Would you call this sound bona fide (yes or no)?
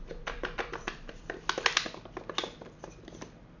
yes